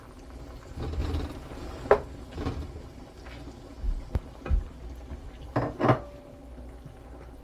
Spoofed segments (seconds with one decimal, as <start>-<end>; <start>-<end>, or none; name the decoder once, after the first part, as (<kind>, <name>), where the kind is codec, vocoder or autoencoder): none